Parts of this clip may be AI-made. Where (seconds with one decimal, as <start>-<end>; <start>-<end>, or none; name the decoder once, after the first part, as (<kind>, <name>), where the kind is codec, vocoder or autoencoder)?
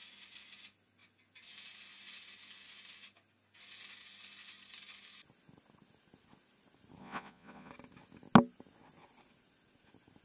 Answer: 7.0-7.7 (vocoder, Vocos)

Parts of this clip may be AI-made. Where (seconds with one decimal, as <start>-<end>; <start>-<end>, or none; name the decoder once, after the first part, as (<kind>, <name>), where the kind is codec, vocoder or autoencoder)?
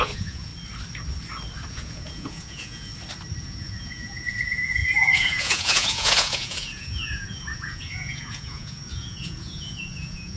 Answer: 0.0-0.5 (vocoder, Vocos); 1.7-2.9; 3.4-10.4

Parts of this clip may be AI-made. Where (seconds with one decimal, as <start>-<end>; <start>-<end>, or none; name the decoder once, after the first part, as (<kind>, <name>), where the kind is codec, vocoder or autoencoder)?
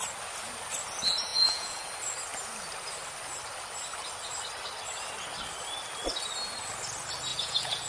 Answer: 1.3-1.8 (vocoder, Vocos); 7.3-7.9